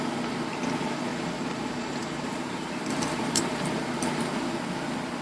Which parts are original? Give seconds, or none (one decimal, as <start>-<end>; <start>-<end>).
0.0-1.1; 4.2-5.2